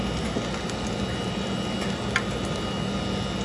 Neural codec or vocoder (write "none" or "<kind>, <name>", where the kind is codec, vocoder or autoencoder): none